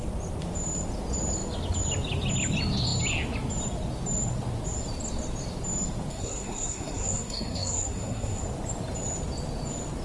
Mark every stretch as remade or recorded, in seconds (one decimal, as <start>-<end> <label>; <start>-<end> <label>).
0.0-6.1 recorded; 6.1-8.4 remade; 8.4-10.0 recorded